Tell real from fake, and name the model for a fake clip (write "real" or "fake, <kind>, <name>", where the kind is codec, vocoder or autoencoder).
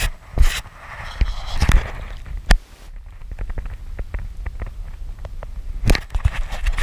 real